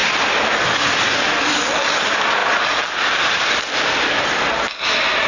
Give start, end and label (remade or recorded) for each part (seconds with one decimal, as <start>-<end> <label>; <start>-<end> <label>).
0.0-5.3 recorded